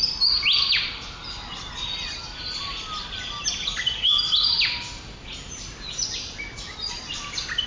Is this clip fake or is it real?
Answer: real